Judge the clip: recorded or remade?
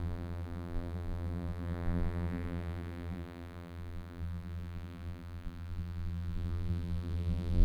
remade